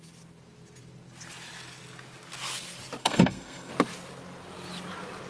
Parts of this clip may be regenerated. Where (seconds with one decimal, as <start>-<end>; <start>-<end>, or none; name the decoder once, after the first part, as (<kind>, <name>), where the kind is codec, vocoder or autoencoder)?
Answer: 3.0-3.7 (codec, SNAC)